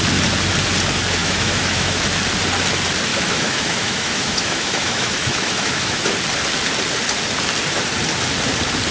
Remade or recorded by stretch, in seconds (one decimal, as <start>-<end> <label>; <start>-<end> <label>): 0.0-1.2 recorded; 1.2-2.0 remade; 2.0-3.1 recorded; 3.1-6.0 remade; 6.0-8.9 recorded